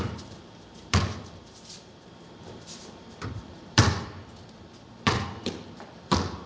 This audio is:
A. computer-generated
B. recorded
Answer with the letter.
A